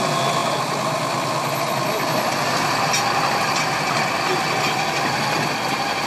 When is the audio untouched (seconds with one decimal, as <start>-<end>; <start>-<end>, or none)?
0.0-6.1